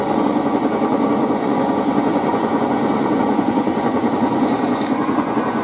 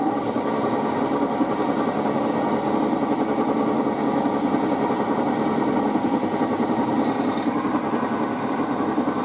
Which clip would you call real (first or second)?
second